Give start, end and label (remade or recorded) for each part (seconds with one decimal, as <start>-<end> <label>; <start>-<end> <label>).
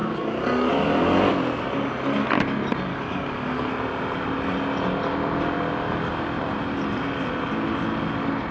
0.0-1.3 remade; 1.3-2.9 recorded; 2.9-3.7 remade; 3.7-8.5 recorded